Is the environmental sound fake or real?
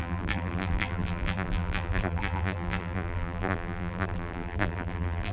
fake